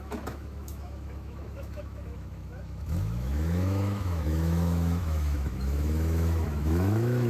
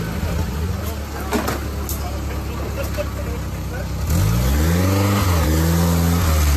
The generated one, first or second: first